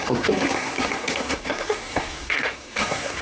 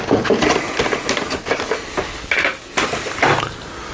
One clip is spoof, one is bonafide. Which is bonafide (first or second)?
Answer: second